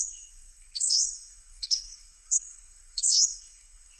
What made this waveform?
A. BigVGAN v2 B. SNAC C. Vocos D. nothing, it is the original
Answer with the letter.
B